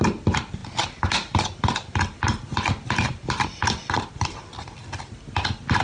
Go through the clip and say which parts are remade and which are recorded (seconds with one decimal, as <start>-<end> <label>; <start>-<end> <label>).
0.0-5.8 recorded